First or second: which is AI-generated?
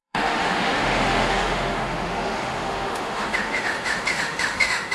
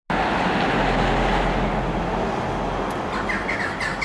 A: first